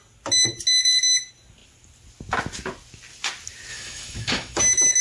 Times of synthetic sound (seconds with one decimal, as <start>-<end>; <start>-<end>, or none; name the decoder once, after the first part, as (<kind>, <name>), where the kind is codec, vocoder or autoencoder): 3.7-4.6 (autoencoder, DAC-VAE)